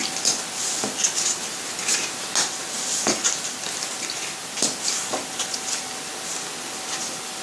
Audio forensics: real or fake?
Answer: real